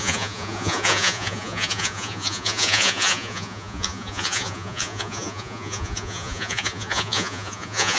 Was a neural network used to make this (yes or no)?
yes